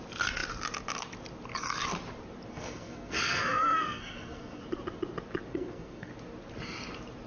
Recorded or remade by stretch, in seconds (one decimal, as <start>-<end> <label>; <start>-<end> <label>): 0.0-2.5 recorded; 2.5-4.6 remade; 4.6-5.5 recorded; 5.5-6.1 remade; 6.1-7.3 recorded